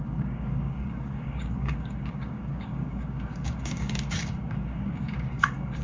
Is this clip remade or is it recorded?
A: remade